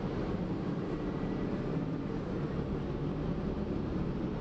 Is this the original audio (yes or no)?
no